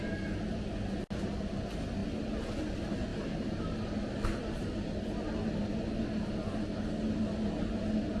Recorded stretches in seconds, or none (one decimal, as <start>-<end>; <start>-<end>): 0.0-8.2